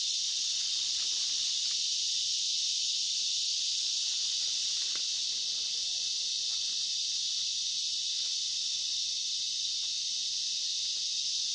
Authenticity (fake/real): real